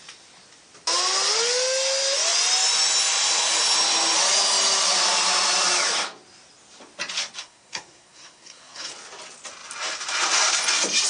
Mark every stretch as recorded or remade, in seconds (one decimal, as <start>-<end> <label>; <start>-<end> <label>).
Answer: 0.0-7.4 recorded; 7.4-8.9 remade; 8.9-11.1 recorded